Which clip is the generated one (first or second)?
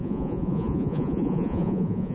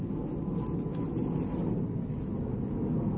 first